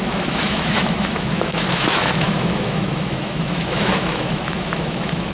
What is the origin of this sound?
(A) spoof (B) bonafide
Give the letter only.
A